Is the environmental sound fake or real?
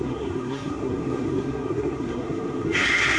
fake